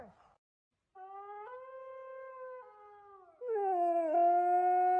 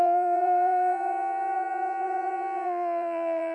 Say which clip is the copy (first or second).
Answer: second